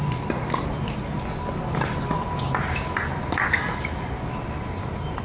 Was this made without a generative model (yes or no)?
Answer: yes